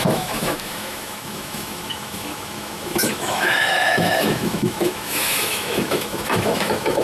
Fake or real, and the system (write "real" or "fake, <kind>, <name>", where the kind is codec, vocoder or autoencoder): fake, autoencoder, DAC-VAE